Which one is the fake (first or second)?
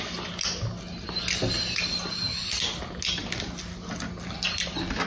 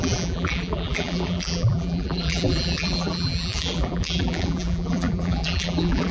second